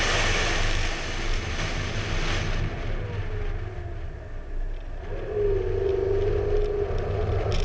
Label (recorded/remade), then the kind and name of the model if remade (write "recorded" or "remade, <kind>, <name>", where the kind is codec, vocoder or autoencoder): recorded